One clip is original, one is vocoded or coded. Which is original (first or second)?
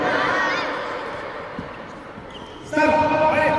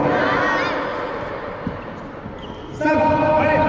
second